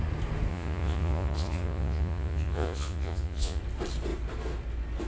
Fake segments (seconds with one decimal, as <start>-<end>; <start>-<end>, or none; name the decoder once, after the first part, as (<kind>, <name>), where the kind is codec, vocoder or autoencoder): 0.5-3.6 (vocoder, Vocos)

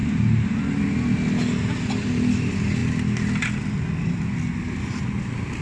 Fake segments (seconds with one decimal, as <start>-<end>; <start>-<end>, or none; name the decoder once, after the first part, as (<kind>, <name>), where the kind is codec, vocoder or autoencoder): none